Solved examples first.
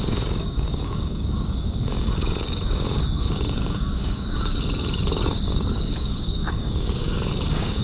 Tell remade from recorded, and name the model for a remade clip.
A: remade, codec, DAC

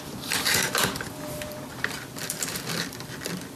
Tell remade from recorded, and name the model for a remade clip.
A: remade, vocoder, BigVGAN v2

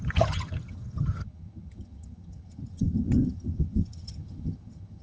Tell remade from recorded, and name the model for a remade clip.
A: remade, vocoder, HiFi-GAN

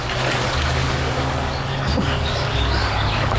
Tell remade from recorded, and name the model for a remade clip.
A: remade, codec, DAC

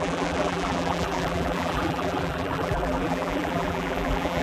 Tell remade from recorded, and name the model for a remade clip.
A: remade, vocoder, BigVGAN v2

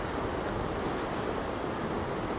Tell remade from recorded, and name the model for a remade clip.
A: recorded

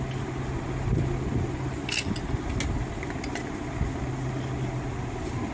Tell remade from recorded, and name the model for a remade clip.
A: recorded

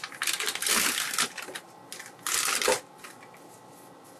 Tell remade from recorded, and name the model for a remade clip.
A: recorded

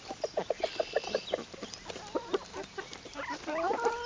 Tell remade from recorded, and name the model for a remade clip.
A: recorded